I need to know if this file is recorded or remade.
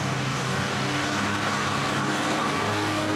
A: remade